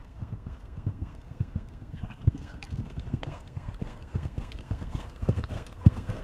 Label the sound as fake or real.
fake